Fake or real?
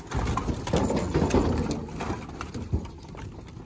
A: real